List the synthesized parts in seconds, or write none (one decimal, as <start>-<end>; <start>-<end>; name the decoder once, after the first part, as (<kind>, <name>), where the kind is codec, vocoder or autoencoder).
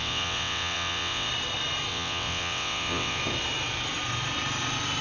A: 0.0-1.3 (vocoder, WaveNeXt); 1.9-3.2